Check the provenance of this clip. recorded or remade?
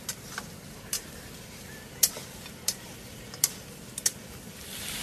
recorded